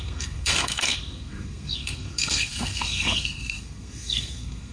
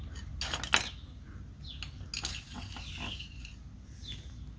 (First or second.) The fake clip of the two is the first